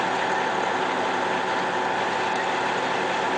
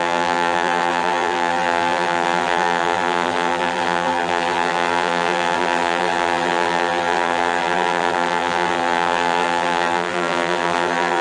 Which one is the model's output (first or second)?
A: second